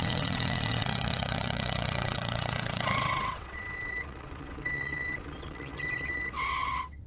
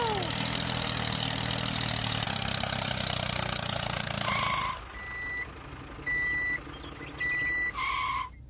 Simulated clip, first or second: first